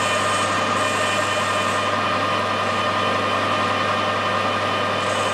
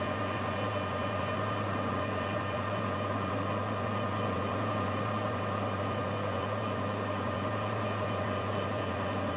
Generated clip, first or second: second